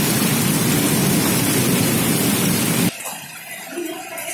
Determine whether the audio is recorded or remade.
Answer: recorded